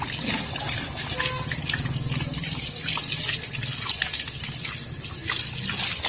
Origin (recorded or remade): recorded